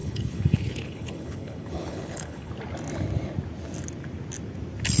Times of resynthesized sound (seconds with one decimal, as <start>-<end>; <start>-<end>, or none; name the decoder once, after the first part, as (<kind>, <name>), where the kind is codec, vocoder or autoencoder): 0.0-2.5 (codec, HILCodec)